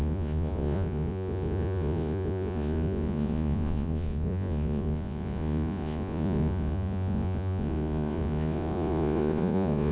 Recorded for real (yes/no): no